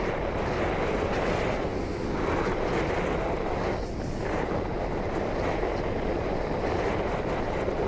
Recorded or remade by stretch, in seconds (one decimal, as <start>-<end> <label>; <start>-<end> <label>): 0.0-7.9 recorded